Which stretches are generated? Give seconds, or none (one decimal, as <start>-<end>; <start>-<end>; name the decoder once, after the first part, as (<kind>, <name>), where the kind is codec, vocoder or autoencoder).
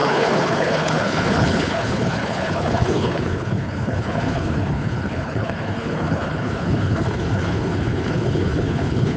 0.0-9.2 (codec, HILCodec)